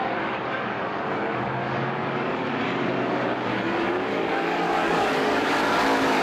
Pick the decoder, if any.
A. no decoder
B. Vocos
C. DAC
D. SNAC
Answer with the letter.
C